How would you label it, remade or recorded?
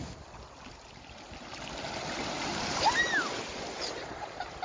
recorded